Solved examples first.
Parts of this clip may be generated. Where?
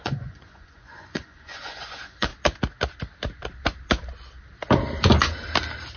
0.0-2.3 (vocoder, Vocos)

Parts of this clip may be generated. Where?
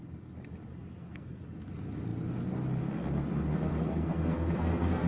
0.7-1.4 (codec, SNAC); 3.7-5.1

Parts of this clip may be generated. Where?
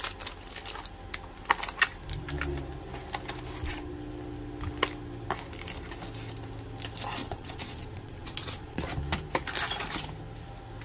7.2-8.9 (vocoder, Vocos)